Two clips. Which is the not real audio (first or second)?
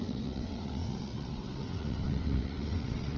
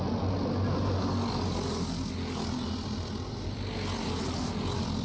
first